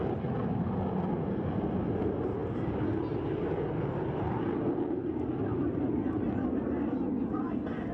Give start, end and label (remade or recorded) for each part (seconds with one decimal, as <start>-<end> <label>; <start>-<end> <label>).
0.0-7.9 recorded